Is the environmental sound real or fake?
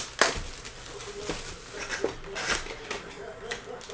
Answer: real